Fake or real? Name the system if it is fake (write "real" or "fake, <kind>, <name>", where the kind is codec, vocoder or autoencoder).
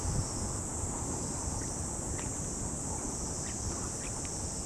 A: real